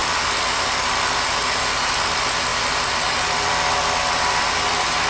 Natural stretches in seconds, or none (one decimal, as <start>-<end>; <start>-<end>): 1.9-2.5; 4.6-5.1